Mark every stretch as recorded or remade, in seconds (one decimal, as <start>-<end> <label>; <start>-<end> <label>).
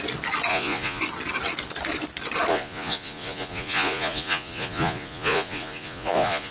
0.0-0.5 recorded; 0.5-1.0 remade; 1.0-2.5 recorded; 2.5-6.5 remade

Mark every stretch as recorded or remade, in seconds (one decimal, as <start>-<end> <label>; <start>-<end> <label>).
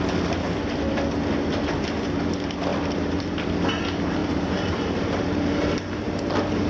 0.0-4.2 recorded; 4.2-6.7 remade